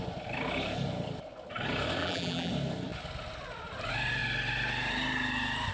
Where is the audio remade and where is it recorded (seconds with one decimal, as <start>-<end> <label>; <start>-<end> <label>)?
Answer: 0.0-2.0 recorded; 2.0-2.5 remade; 2.5-5.7 recorded